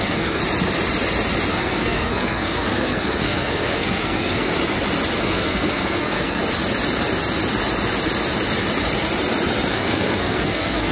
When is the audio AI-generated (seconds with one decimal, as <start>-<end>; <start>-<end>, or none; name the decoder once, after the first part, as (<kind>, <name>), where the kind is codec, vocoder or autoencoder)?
0.0-0.4 (codec, SNAC); 1.5-4.5; 5.2-6.4; 9.7-10.9